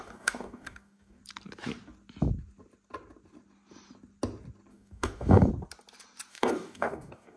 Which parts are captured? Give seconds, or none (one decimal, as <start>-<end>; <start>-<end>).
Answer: 1.2-4.7; 5.5-6.3